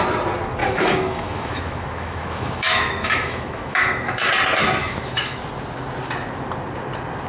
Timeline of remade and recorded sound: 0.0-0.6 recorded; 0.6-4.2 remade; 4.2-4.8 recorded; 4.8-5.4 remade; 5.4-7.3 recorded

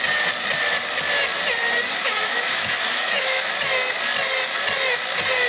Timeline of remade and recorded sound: 0.0-1.9 recorded; 1.9-3.5 remade; 3.5-5.5 recorded

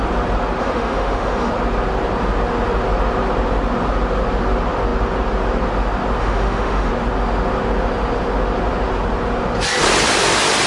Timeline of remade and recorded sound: 0.0-0.6 recorded; 0.6-1.5 remade; 1.5-6.2 recorded; 6.2-6.9 remade; 6.9-10.7 recorded

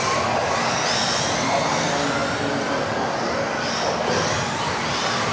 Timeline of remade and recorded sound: 0.0-5.3 recorded

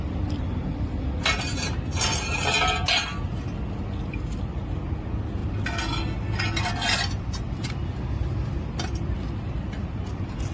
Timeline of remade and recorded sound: 0.0-10.5 recorded